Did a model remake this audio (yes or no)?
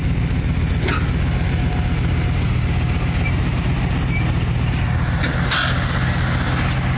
no